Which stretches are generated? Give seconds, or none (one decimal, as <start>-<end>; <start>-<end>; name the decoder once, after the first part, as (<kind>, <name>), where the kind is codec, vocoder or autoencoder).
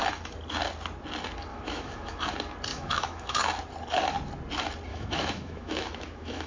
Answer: 1.5-2.2 (autoencoder, DAC-VAE); 2.7-3.4; 4.9-6.5